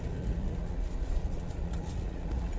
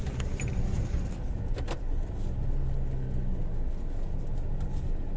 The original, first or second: second